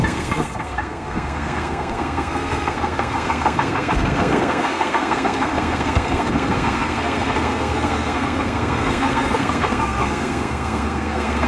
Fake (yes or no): yes